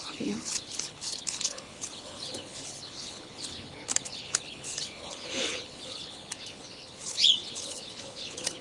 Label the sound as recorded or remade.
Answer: remade